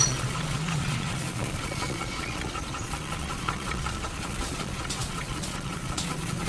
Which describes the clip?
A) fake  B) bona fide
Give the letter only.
A